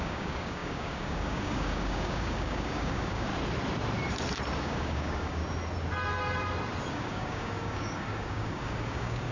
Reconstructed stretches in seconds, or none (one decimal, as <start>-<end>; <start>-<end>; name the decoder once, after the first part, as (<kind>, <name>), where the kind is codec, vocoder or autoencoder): 0.0-3.3 (codec, DAC); 4.6-5.4; 6.9-9.3